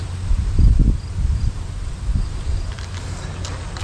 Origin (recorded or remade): recorded